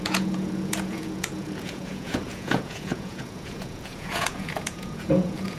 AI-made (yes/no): yes